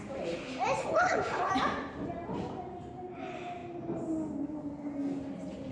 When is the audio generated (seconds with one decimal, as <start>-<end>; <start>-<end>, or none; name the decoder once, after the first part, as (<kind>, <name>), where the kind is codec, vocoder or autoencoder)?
0.8-1.5 (codec, HILCodec)